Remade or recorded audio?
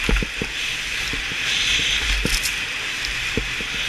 recorded